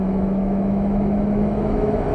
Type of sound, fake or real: fake